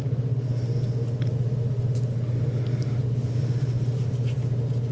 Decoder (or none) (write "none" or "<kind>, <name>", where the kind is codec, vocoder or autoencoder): none